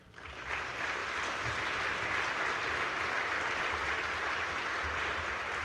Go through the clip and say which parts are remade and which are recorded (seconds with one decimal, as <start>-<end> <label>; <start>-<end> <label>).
0.0-5.6 recorded

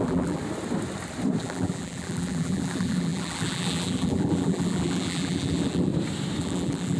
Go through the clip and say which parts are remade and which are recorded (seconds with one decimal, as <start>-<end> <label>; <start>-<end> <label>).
0.0-0.4 remade; 0.4-1.4 recorded; 1.4-5.9 remade; 5.9-6.4 recorded; 6.4-7.0 remade

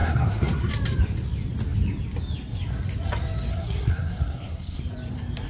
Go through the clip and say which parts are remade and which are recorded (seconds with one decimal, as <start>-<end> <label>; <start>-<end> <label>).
0.0-0.7 remade; 0.7-3.5 recorded; 3.5-4.8 remade; 4.8-5.5 recorded

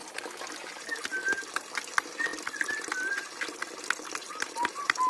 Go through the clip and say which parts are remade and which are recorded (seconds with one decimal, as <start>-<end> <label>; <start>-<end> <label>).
0.0-5.1 recorded

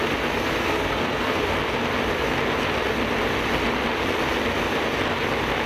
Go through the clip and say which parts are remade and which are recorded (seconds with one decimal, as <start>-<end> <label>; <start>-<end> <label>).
0.0-0.6 recorded; 0.6-1.4 remade; 1.4-5.7 recorded

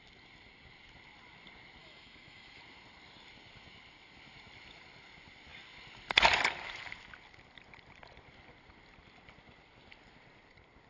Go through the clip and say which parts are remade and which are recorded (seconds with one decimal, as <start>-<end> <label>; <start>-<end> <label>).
0.0-1.8 recorded; 1.8-2.6 remade; 2.6-10.9 recorded

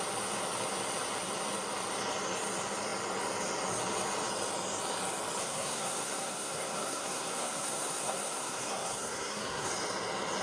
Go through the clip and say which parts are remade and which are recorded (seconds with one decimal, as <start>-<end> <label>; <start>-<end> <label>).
0.0-5.4 recorded; 5.4-9.7 remade; 9.7-10.4 recorded

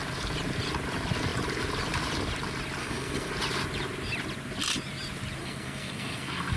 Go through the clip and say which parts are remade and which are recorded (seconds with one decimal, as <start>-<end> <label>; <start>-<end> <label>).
0.0-2.8 recorded; 2.8-3.3 remade; 3.3-5.4 recorded; 5.4-6.6 remade